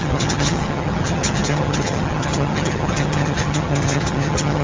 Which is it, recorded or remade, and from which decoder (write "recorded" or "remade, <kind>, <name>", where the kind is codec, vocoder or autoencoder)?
remade, vocoder, HiFi-GAN